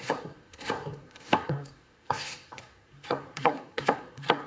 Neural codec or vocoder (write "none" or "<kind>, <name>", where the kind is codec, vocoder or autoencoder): codec, SNAC